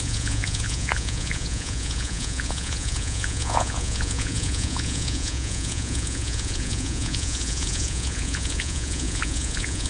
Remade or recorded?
remade